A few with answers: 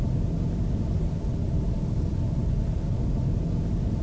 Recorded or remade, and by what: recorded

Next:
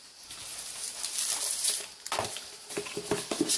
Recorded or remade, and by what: recorded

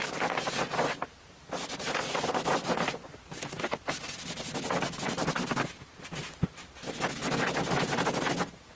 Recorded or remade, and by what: recorded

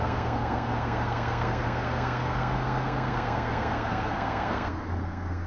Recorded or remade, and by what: remade, codec, SNAC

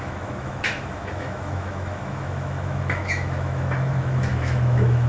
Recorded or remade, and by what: remade, autoencoder, DAC-VAE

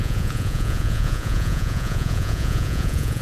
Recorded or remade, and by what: remade, vocoder, Vocos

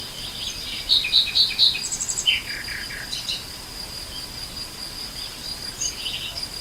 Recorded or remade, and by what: recorded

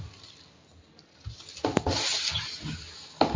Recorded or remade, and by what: recorded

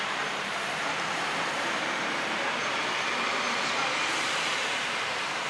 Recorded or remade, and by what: remade, vocoder, BigVGAN v2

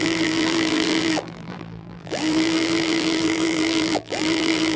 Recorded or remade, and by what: remade, vocoder, BigVGAN v2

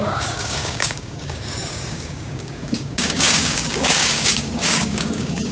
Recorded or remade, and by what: remade, codec, DAC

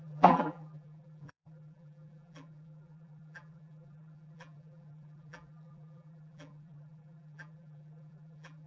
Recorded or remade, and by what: remade, vocoder, BigVGAN v2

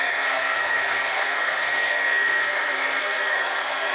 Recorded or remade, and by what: remade, codec, SNAC